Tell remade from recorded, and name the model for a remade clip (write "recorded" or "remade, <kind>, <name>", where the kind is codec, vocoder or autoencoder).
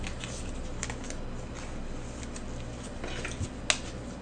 recorded